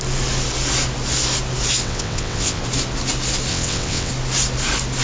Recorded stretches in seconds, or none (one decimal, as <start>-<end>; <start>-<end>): 0.0-1.8; 2.6-3.5; 4.1-5.0